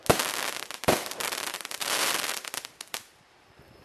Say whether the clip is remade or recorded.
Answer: recorded